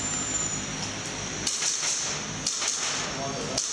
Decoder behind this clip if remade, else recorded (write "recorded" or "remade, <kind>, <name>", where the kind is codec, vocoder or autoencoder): recorded